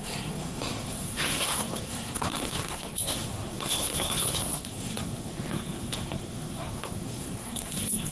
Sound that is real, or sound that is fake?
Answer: fake